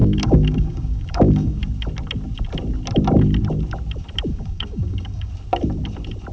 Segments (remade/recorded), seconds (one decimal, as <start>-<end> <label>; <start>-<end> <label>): 0.0-1.6 remade; 1.6-4.3 recorded; 4.3-5.3 remade; 5.3-6.3 recorded